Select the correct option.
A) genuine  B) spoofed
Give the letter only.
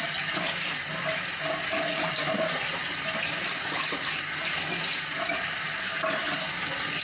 A